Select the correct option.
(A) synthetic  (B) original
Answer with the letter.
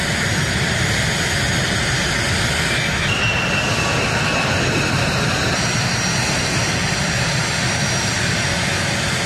B